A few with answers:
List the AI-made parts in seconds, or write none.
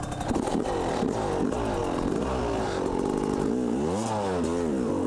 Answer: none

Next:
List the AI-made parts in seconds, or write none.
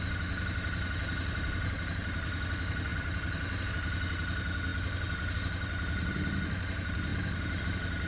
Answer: none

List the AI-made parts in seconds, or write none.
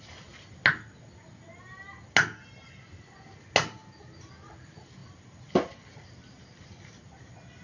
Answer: 3.8-4.5 (vocoder, BigVGAN v2); 5.0-7.6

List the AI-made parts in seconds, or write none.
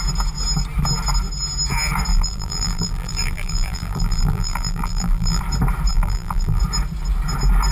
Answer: 2.1-5.4 (vocoder, BigVGAN v2); 5.9-6.6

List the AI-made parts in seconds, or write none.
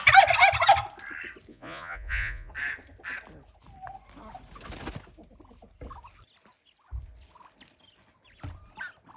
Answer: 1.5-2.5 (vocoder, Vocos)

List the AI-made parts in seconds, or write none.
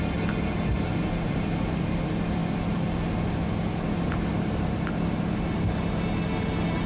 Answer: none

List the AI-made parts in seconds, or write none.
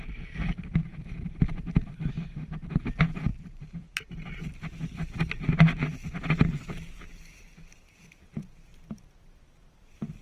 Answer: 3.3-4.1 (vocoder, BigVGAN v2); 8.7-10.2